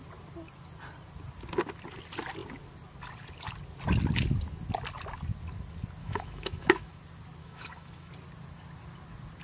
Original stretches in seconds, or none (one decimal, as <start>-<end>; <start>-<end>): 0.0-6.0; 7.0-7.4; 8.1-9.4